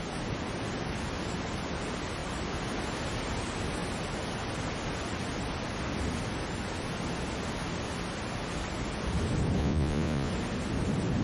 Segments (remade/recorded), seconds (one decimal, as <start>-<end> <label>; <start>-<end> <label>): 0.0-9.6 recorded; 9.6-10.3 remade; 10.3-11.2 recorded